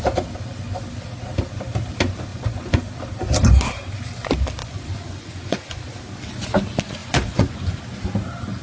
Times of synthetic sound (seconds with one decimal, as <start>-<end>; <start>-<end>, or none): 2.3-2.8; 4.6-5.8; 7.0-7.8